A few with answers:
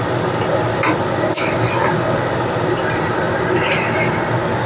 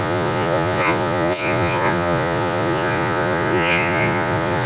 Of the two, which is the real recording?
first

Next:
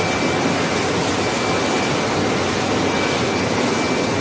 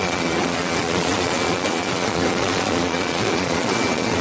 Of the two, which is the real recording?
first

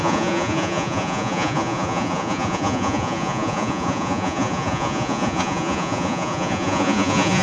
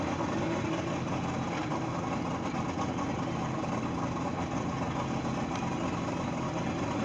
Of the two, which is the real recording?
second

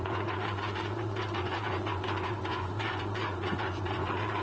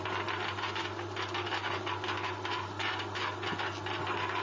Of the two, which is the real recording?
second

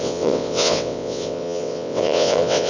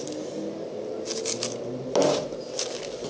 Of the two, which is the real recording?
second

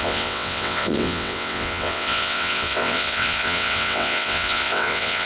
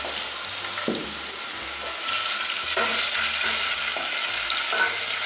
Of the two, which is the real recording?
second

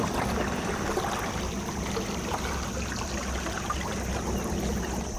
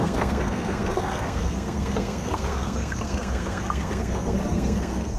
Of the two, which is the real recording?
first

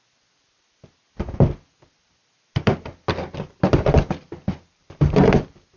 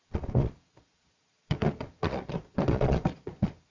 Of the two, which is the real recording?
first